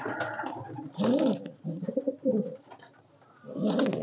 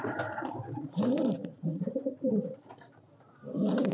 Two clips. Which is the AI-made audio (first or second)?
second